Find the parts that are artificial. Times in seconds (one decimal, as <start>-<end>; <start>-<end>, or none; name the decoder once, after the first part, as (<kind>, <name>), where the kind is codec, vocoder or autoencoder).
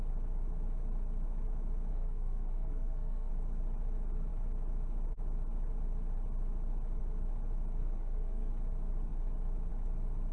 1.9-3.3 (codec, SNAC); 7.8-8.5